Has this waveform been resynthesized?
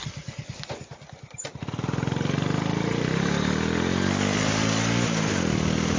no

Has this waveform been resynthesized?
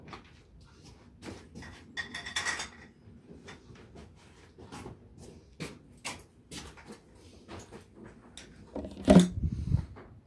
no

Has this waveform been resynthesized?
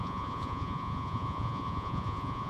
yes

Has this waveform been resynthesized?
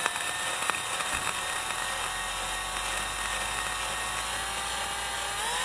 no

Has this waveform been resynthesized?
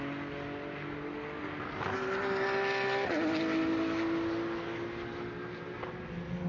no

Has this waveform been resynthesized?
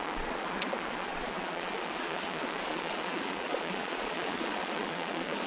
yes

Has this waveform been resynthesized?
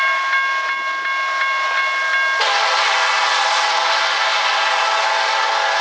no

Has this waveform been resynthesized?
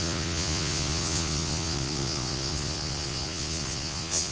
yes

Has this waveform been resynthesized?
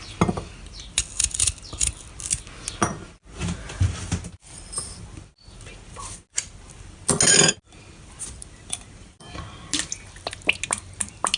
no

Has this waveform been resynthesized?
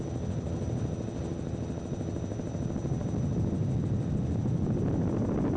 no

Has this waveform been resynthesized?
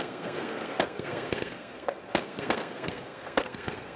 yes